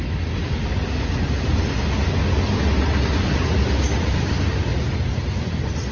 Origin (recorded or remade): recorded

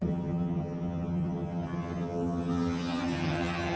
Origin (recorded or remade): remade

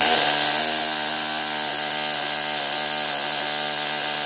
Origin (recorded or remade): recorded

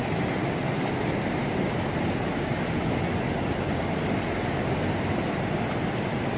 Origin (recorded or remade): recorded